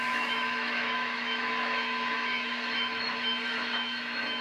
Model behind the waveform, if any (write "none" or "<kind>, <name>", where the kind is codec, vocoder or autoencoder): autoencoder, DAC-VAE